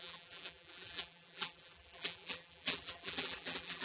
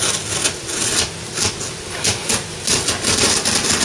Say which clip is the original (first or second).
second